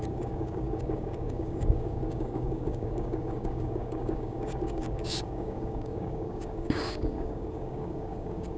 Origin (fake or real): fake